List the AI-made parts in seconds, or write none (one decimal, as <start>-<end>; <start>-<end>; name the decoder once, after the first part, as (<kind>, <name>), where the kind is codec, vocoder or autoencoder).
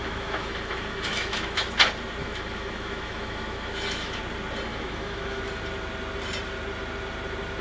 0.0-1.7 (autoencoder, DAC-VAE); 2.2-4.2; 4.7-5.4